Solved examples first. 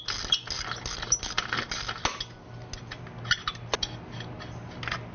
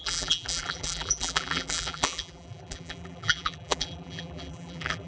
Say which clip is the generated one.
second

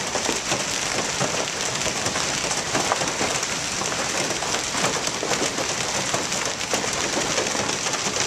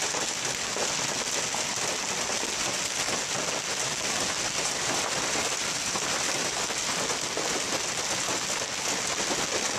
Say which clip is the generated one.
first